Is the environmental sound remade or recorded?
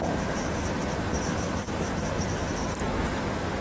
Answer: remade